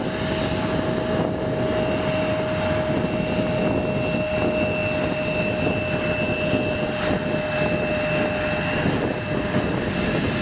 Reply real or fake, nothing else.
real